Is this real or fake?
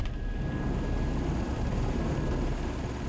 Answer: real